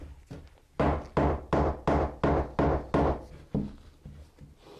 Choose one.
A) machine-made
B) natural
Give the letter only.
B